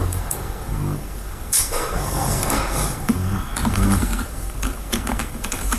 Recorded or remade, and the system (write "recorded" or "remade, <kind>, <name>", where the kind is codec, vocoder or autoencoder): remade, codec, SNAC